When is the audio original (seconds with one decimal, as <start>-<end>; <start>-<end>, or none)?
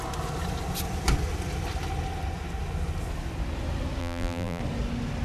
0.0-4.0; 4.6-5.2